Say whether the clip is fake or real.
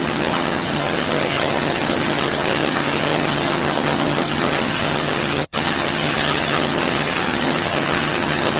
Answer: fake